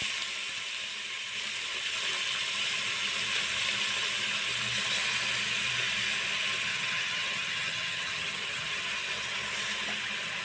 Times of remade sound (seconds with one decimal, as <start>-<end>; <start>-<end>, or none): 6.7-8.9